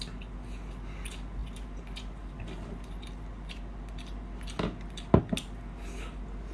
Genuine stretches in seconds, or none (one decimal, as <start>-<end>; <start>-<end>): 0.0-6.5